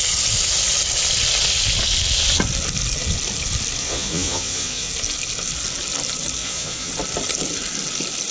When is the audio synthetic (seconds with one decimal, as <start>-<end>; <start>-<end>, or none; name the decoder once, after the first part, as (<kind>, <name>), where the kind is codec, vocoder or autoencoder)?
3.8-4.9 (vocoder, Vocos); 6.4-6.9